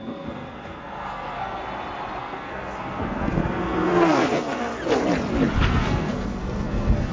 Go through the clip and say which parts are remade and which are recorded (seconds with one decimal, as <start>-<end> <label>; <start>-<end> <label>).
0.0-1.6 remade; 1.6-2.2 recorded; 2.2-4.7 remade; 4.7-5.7 recorded; 5.7-7.1 remade